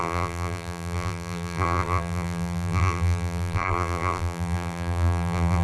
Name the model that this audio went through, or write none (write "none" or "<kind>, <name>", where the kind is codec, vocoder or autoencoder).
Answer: vocoder, BigVGAN v2